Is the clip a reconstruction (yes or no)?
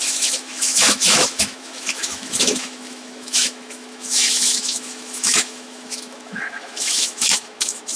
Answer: yes